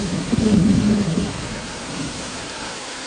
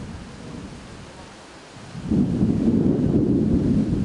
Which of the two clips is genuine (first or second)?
second